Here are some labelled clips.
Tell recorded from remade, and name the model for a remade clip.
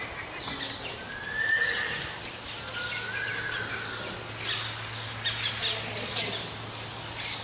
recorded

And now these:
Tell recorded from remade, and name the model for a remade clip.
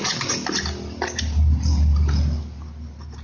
recorded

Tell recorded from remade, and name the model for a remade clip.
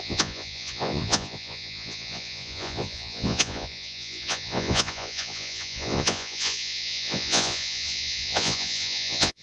remade, vocoder, Vocos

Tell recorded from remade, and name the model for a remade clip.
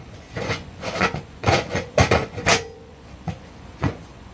remade, vocoder, Vocos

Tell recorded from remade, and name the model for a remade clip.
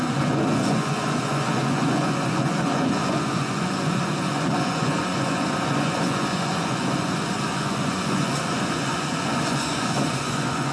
remade, vocoder, Vocos